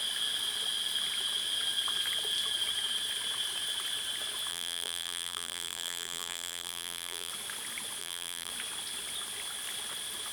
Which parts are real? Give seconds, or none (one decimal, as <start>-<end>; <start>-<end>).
0.0-4.5; 7.3-8.0; 8.5-10.3

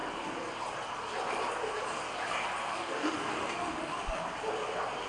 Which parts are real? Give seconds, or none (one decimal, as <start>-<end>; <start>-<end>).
0.0-2.6; 4.2-5.1

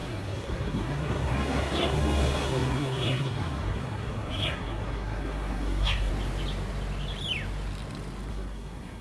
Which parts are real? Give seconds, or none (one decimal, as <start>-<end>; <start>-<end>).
6.1-8.3